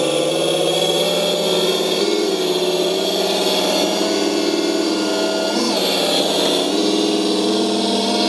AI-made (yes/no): no